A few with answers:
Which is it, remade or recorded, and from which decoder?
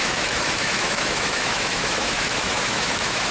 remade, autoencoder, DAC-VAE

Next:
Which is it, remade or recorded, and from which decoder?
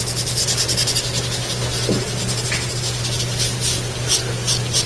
recorded